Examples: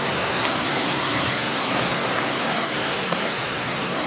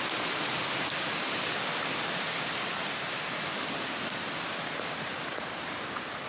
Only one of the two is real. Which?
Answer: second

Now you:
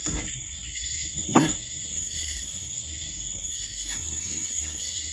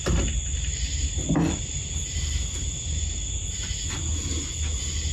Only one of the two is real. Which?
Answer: second